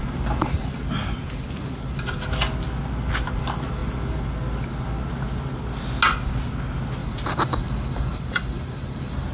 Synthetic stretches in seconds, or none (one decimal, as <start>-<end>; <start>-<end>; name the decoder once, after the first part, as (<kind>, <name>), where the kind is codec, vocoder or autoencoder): 7.0-9.3 (vocoder, BigVGAN v2)